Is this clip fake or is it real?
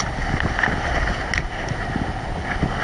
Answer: real